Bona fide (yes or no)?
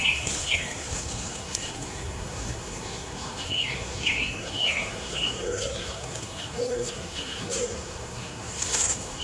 no